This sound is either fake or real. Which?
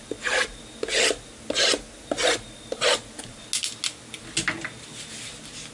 real